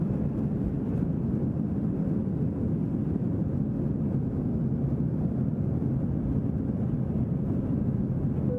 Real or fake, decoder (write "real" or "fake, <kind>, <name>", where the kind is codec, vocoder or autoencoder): real